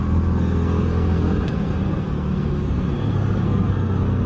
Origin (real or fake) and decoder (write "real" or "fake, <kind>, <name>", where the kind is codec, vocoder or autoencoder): fake, codec, SNAC